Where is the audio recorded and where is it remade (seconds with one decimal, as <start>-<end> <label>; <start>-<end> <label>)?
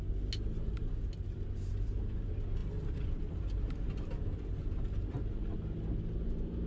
0.0-6.7 recorded